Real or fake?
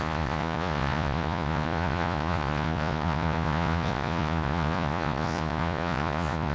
fake